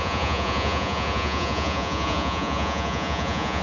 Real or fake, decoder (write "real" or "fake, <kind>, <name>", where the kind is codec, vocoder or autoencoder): fake, vocoder, Vocos